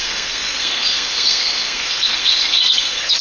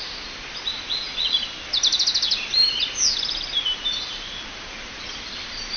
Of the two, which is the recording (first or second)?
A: second